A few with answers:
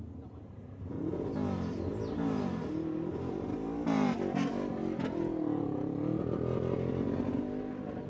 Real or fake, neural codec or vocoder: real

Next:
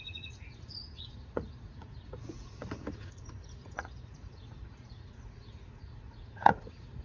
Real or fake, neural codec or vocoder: fake, vocoder, Vocos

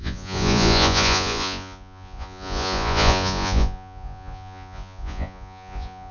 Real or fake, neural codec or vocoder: fake, vocoder, Vocos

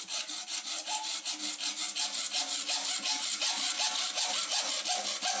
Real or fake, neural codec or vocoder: real